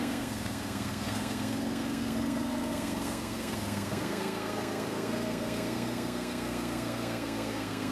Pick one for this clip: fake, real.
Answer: fake